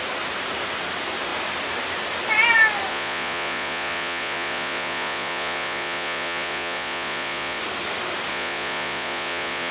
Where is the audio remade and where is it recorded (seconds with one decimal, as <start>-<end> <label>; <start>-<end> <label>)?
0.0-2.9 recorded; 2.9-7.6 remade; 7.6-8.3 recorded; 8.3-9.7 remade